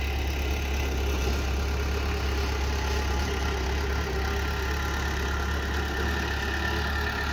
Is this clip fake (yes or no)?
no